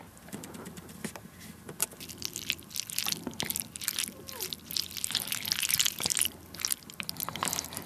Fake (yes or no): no